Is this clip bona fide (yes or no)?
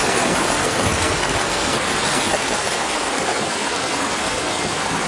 no